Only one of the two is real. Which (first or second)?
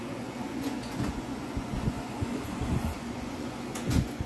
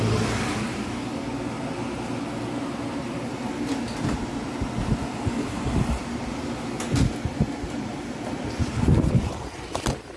second